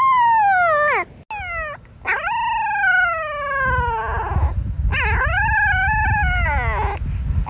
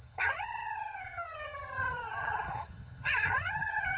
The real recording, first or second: first